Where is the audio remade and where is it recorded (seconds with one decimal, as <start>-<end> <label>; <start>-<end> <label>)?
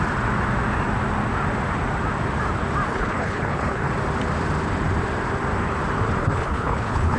0.0-2.9 recorded; 2.9-3.9 remade; 3.9-6.2 recorded; 6.2-7.2 remade